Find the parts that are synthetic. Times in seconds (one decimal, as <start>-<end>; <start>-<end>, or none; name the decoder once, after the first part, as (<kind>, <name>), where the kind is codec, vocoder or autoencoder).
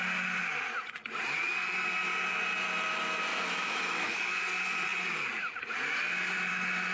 3.3-4.4 (autoencoder, DAC-VAE)